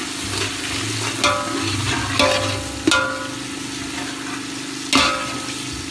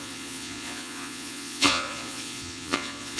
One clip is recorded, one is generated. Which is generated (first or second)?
second